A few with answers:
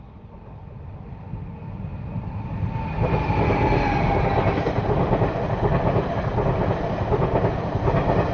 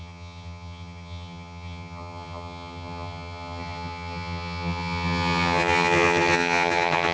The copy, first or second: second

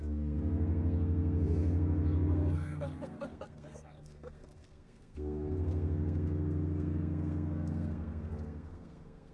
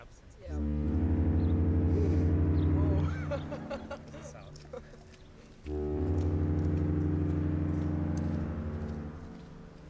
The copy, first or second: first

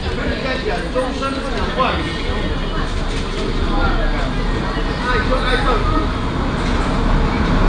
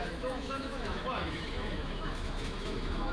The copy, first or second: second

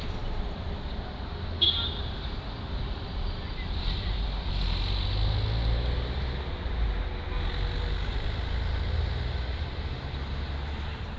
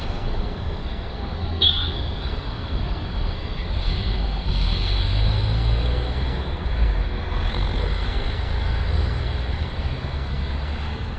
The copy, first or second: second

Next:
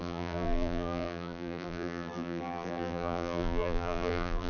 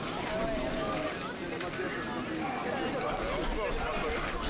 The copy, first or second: first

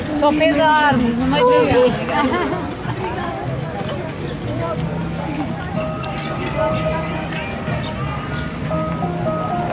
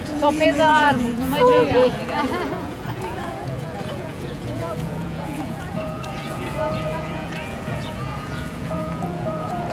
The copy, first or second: second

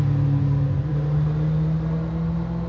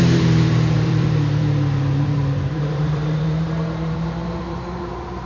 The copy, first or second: second